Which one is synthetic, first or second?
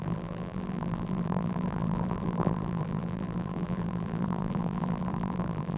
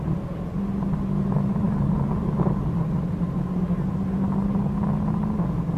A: first